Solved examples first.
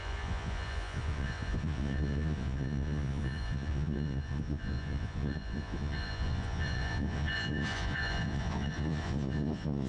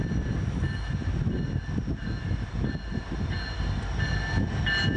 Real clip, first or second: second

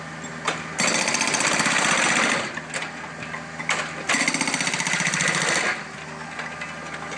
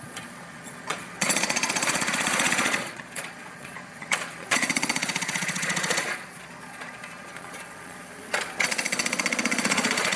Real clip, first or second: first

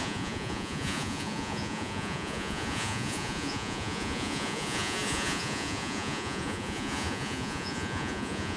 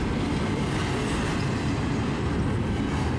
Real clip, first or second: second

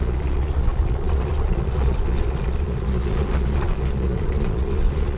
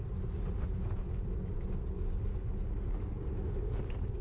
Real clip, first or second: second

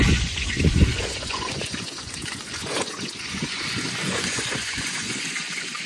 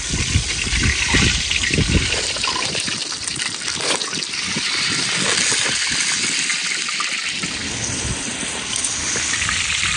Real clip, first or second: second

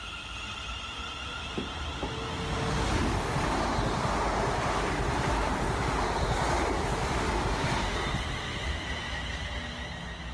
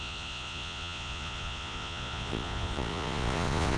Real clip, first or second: first